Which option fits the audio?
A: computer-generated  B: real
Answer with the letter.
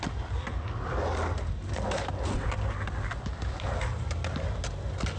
B